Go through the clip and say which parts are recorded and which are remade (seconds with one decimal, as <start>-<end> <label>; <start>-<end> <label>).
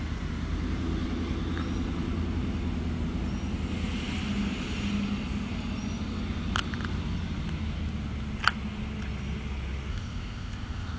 0.0-9.9 recorded; 9.9-11.0 remade